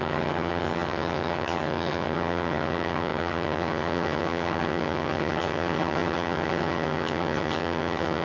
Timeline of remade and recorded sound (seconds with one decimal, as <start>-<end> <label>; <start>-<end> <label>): 0.0-8.2 remade